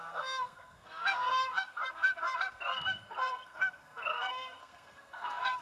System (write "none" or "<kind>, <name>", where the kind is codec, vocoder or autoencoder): codec, SNAC